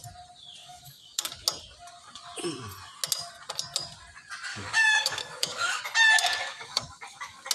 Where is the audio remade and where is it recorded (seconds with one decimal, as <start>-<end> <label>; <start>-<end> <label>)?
0.0-0.6 recorded; 0.6-1.3 remade; 1.3-4.5 recorded; 4.5-5.8 remade; 5.8-6.4 recorded; 6.4-7.5 remade